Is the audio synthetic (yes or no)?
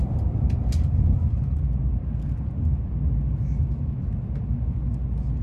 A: no